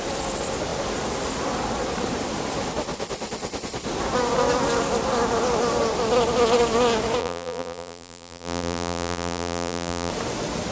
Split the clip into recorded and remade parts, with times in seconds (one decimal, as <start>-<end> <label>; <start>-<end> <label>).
0.0-7.2 recorded; 7.2-10.1 remade; 10.1-10.7 recorded